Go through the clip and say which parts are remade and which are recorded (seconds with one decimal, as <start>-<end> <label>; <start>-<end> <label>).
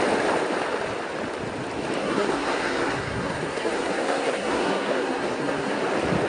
0.0-2.0 recorded; 2.0-5.8 remade; 5.8-6.3 recorded